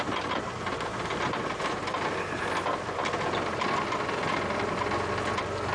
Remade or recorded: recorded